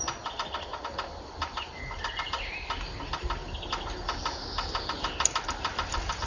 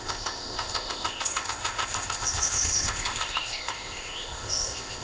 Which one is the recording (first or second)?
first